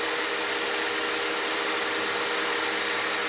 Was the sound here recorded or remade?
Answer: recorded